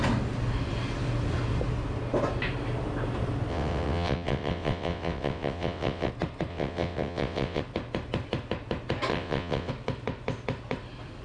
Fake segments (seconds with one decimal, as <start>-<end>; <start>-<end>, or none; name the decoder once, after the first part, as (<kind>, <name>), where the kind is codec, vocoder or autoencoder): 3.5-6.1 (vocoder, WaveNeXt); 6.5-7.6; 9.1-9.7